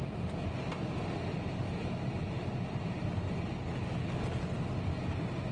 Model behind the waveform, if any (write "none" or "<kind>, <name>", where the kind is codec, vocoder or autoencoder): none